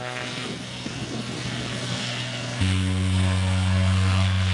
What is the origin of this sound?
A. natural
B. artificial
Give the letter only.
B